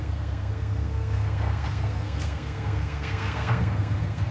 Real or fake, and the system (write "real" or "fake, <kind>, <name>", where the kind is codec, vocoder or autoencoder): fake, codec, SNAC